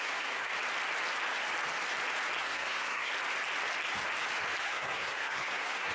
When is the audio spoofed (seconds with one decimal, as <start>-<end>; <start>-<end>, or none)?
0.0-0.5; 2.4-3.1; 4.6-5.9